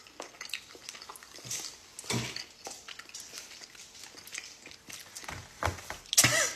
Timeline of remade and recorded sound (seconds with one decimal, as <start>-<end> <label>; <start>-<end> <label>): 0.0-6.6 recorded